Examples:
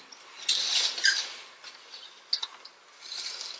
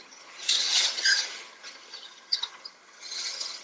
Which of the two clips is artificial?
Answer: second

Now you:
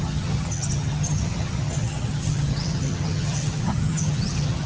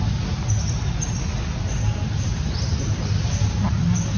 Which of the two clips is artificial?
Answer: first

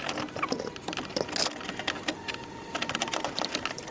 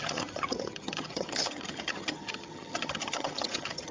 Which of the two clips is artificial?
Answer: second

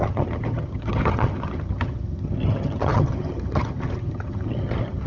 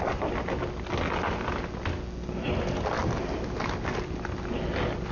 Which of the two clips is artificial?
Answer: first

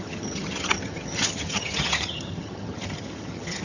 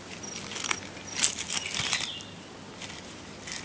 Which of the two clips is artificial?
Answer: first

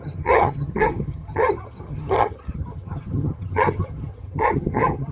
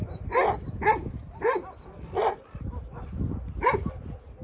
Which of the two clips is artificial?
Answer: first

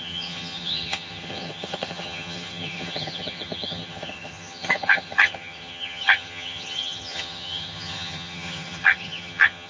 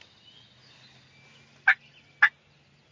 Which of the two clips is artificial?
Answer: first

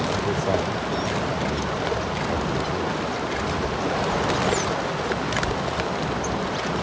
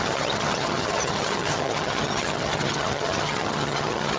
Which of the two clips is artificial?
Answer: second